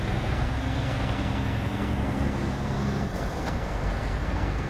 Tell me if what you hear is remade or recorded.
remade